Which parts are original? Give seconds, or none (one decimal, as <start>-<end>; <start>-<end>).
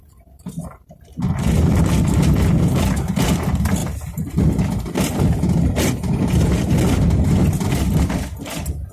0.0-8.9